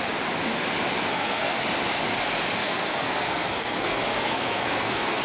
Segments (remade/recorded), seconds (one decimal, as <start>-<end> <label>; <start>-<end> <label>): 0.0-1.1 recorded; 1.1-1.6 remade; 1.6-2.6 recorded; 2.6-5.2 remade